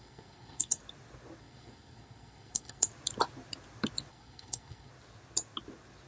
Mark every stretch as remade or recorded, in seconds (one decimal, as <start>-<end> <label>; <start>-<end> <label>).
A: 0.0-0.8 remade; 0.8-1.4 recorded; 1.4-2.9 remade; 2.9-4.1 recorded; 4.1-4.9 remade; 4.9-6.1 recorded